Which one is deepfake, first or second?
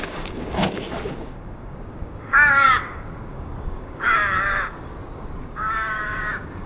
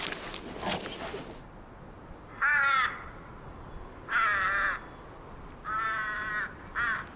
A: first